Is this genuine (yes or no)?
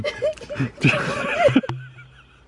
yes